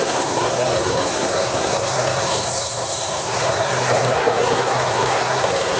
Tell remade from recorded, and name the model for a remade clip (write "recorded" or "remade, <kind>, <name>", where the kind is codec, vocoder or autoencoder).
remade, codec, SNAC